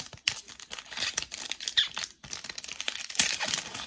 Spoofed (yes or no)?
no